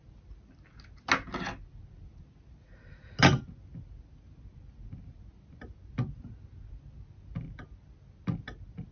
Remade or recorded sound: recorded